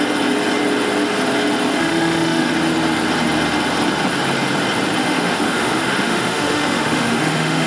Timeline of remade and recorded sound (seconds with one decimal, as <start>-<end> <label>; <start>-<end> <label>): 0.0-1.7 recorded; 1.7-2.5 remade; 2.5-5.0 recorded; 5.0-7.7 remade